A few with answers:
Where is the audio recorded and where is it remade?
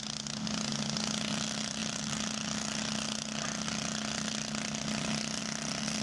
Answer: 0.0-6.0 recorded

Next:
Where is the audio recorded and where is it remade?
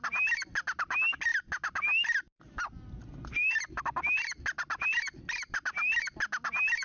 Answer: 0.0-6.8 recorded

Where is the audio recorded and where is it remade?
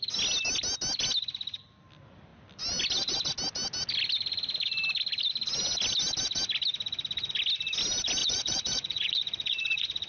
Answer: 0.0-8.2 recorded; 8.2-10.1 remade